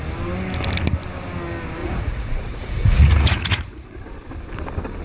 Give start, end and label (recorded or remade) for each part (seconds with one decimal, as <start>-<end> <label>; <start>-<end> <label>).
0.0-1.8 recorded; 1.8-3.9 remade; 3.9-5.0 recorded